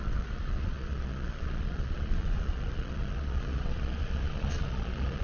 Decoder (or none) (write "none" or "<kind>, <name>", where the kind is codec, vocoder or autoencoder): vocoder, Vocos